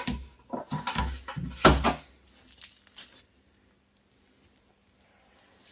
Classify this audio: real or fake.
fake